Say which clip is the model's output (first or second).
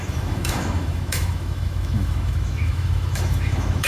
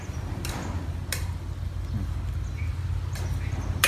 first